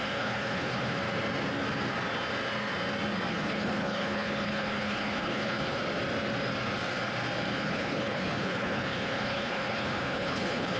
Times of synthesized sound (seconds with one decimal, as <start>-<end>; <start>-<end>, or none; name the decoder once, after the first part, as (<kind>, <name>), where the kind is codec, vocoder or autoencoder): 0.0-1.0 (codec, HILCodec); 3.3-5.8; 7.5-10.8